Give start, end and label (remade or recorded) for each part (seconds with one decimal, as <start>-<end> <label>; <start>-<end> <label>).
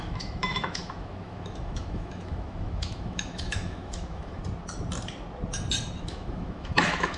0.0-4.4 remade; 4.4-6.0 recorded; 6.0-7.2 remade